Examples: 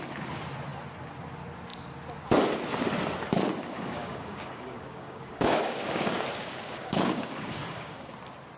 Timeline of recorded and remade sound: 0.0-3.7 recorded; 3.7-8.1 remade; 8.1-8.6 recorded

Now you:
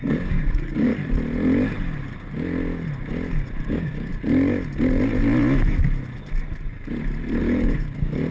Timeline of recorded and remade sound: 0.0-0.9 remade; 0.9-3.6 recorded; 3.6-4.1 remade; 4.1-7.4 recorded; 7.4-8.3 remade

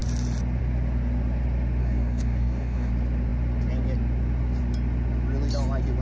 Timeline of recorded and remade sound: 0.0-1.8 recorded; 1.8-2.9 remade; 2.9-6.0 recorded

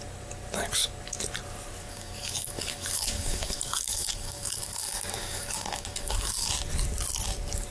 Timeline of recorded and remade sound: 0.0-1.9 recorded; 1.9-6.5 remade; 6.5-7.7 recorded

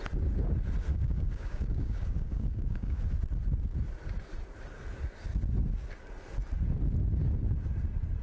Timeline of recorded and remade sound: 0.0-0.9 recorded; 0.9-3.0 remade; 3.0-8.2 recorded

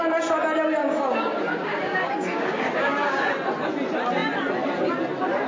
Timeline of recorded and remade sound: 0.0-0.8 recorded; 0.8-3.3 remade; 3.3-5.5 recorded

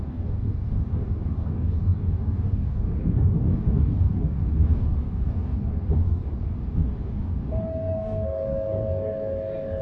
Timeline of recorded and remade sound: 0.0-9.8 remade